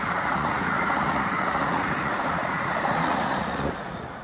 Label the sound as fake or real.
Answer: fake